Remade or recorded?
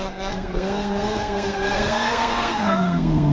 remade